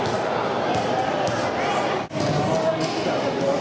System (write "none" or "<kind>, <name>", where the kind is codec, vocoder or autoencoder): none